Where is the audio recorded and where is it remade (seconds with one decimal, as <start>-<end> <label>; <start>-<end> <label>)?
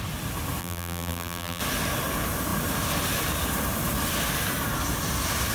0.0-0.6 recorded; 0.6-1.6 remade; 1.6-5.5 recorded